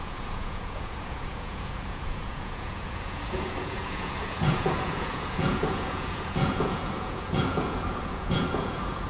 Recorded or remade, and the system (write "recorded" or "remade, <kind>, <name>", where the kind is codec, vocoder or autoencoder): remade, vocoder, Vocos